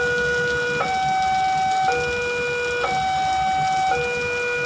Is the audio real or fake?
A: real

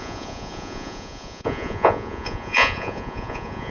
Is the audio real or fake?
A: fake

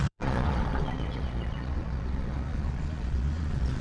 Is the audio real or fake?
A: fake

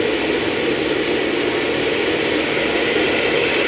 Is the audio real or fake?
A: real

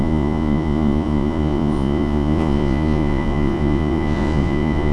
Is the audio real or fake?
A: fake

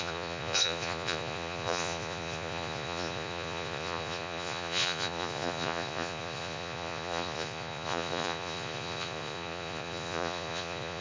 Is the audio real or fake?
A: fake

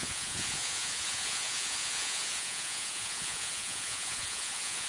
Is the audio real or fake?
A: fake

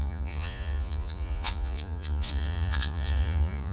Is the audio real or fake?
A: fake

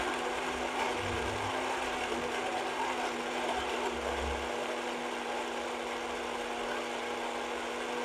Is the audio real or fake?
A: real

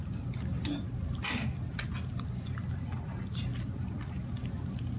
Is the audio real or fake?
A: real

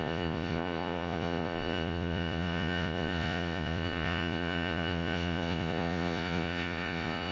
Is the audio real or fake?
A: fake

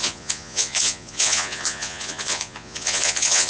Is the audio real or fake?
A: fake